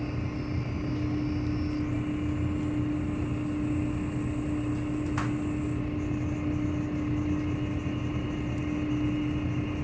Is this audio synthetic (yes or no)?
no